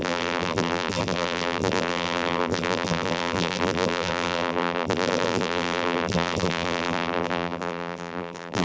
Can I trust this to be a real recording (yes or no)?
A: no